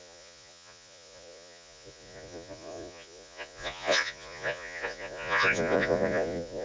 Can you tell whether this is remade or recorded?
remade